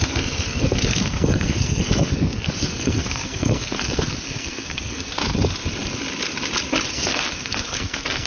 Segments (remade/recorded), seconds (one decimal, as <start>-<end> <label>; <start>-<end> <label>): 0.0-5.2 remade; 5.2-6.9 recorded; 6.9-8.3 remade